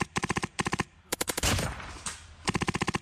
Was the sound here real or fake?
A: fake